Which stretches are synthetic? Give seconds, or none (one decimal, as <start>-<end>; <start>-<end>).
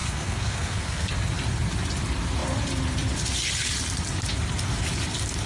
0.0-1.1